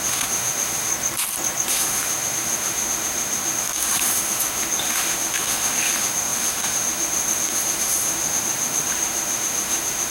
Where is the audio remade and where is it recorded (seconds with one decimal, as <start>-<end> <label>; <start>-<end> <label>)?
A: 0.0-0.9 remade; 0.9-1.7 recorded; 1.7-10.1 remade